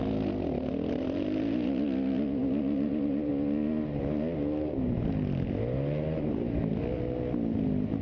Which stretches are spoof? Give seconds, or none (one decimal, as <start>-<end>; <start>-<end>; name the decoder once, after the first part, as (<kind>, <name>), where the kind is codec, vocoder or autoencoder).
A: 2.4-3.3 (vocoder, BigVGAN v2)